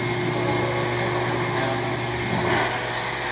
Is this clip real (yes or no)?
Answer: yes